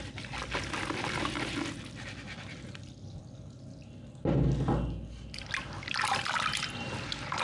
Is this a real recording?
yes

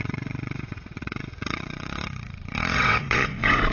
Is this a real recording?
no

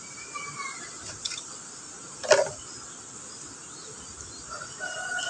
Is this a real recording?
yes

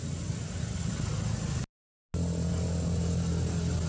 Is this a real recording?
yes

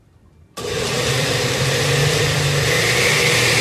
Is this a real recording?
no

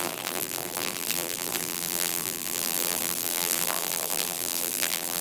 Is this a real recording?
no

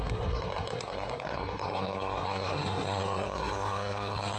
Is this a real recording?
no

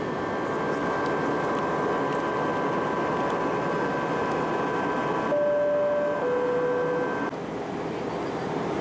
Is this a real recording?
yes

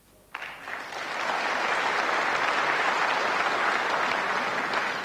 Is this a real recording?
yes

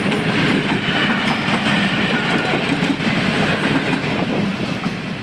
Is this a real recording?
yes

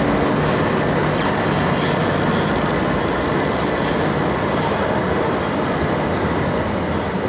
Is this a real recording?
yes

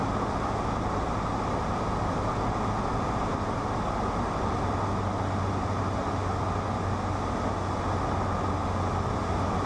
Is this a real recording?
yes